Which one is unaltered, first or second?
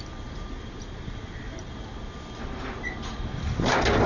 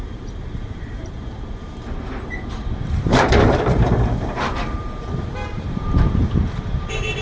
first